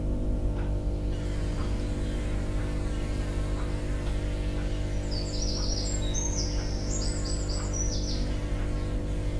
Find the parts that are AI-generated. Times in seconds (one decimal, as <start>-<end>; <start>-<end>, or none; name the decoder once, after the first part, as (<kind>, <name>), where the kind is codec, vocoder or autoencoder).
none